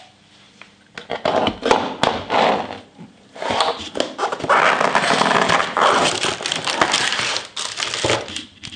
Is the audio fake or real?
real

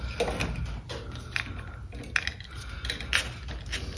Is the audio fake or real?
real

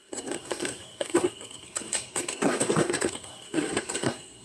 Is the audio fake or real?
fake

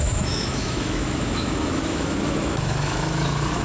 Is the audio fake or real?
fake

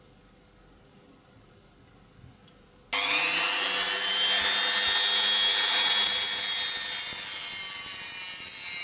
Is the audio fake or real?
real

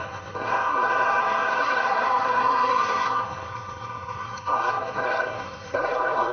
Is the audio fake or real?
fake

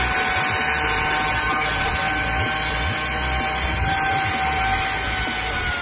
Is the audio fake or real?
real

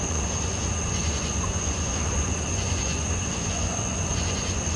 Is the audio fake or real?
fake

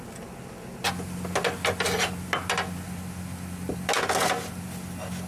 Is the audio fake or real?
real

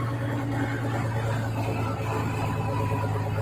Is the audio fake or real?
real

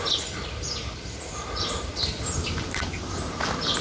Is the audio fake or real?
real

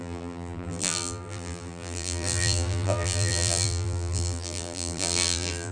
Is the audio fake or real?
fake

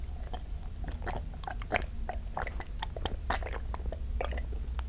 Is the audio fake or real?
real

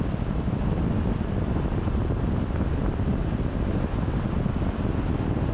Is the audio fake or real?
real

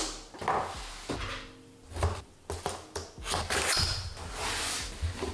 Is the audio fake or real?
real